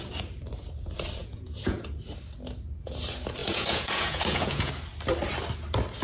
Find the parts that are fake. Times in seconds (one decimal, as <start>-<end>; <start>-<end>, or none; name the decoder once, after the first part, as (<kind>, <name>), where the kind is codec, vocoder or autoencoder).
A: 1.2-1.9 (vocoder, Vocos); 3.4-4.7